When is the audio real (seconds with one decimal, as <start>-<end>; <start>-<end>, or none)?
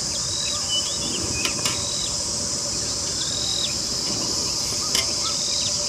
0.0-3.5; 4.1-5.9